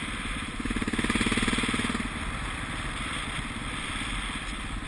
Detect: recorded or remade remade